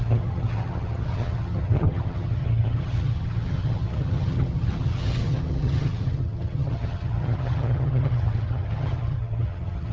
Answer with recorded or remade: remade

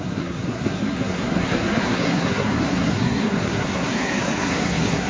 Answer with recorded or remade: remade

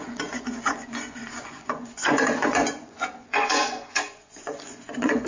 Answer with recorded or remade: remade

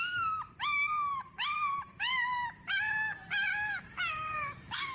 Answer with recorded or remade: remade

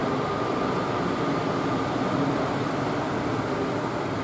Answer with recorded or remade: recorded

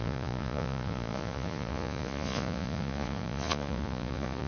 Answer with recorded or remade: remade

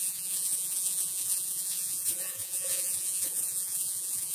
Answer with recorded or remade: remade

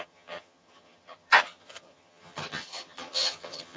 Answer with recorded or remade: remade